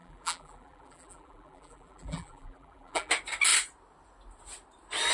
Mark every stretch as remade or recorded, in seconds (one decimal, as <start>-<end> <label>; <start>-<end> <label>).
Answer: 0.0-3.1 remade; 3.1-5.1 recorded